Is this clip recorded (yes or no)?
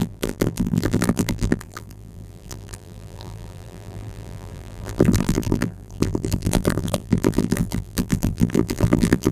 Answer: no